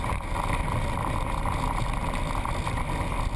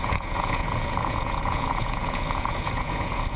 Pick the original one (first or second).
first